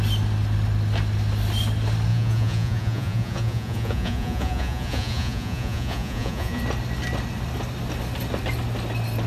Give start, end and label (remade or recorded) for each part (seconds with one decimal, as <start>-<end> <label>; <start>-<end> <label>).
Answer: 0.0-2.1 recorded; 2.1-6.6 remade; 6.6-9.3 recorded